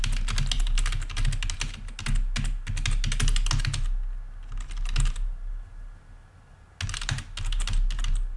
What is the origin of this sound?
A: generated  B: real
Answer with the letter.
B